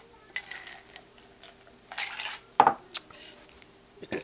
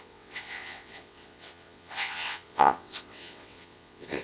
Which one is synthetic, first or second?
second